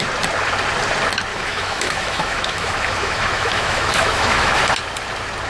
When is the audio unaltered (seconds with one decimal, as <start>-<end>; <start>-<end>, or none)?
0.0-1.3; 4.6-5.5